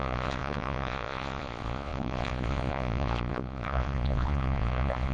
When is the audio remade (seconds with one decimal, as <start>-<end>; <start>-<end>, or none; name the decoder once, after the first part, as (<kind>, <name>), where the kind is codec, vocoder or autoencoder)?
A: 0.0-5.1 (vocoder, Vocos)